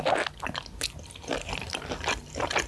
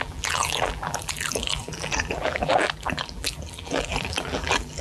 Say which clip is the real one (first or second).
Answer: first